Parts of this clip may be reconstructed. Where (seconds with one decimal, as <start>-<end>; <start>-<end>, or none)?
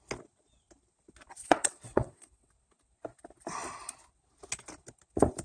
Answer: 1.4-2.5